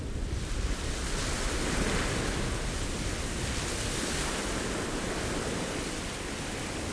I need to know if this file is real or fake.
real